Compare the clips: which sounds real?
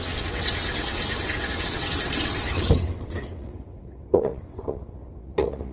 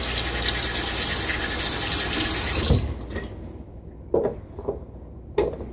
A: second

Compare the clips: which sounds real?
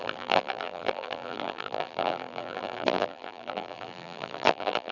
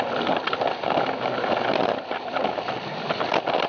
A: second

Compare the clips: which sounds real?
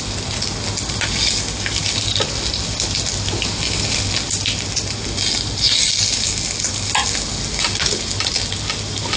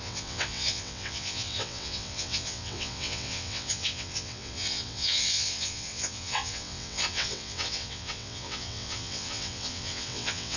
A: first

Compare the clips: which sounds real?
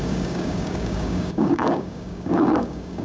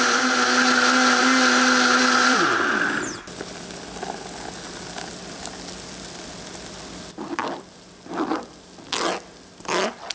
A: second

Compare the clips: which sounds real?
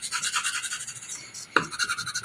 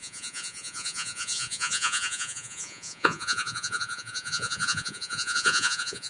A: first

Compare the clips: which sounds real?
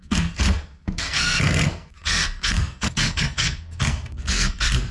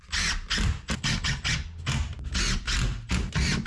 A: second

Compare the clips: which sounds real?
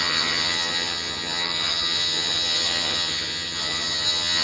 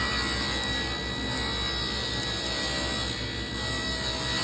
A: second